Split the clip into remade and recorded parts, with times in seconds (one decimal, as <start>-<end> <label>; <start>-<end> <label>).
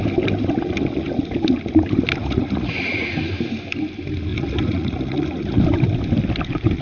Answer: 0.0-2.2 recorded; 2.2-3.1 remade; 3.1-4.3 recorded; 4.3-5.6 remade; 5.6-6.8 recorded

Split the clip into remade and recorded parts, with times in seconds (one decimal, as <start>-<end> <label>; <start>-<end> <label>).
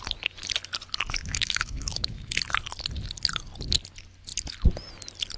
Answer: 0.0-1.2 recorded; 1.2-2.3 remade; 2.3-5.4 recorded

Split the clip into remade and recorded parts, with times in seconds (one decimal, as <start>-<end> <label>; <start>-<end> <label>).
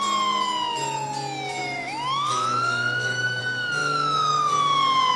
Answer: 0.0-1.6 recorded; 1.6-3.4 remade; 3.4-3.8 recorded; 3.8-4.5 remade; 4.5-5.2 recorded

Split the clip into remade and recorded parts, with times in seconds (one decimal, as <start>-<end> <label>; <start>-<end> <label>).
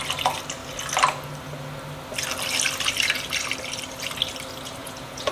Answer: 0.0-4.8 recorded; 4.8-5.3 remade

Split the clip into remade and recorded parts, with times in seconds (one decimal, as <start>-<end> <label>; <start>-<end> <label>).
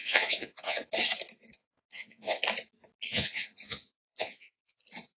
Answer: 0.0-0.9 remade; 0.9-1.6 recorded; 1.6-2.4 remade; 2.4-3.1 recorded; 3.1-4.8 remade; 4.8-5.2 recorded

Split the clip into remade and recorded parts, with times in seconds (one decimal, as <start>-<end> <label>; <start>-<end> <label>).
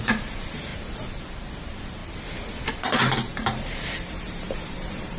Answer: 0.0-0.7 remade; 0.7-1.6 recorded; 1.6-2.0 remade; 2.0-2.7 recorded; 2.7-5.2 remade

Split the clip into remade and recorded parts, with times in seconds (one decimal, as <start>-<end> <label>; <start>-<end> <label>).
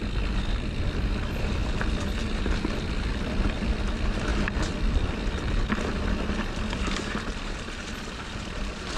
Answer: 0.0-1.6 remade; 1.6-2.4 recorded; 2.4-4.3 remade; 4.3-6.3 recorded; 6.3-9.0 remade